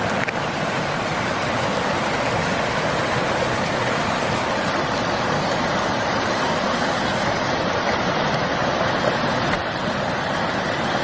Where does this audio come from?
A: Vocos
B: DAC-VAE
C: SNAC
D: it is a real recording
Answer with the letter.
D